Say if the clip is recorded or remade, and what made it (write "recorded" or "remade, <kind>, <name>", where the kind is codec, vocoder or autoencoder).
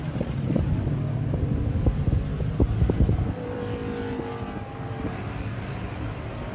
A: recorded